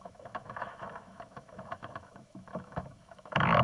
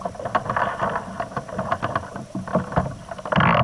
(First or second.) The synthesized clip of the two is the first